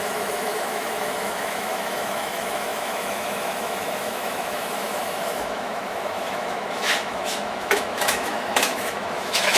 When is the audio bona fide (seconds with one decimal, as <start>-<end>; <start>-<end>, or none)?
none